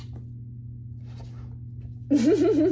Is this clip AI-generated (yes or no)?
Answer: no